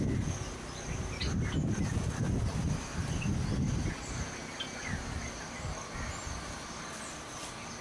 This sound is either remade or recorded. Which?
recorded